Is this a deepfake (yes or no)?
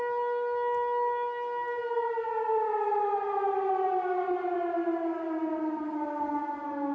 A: no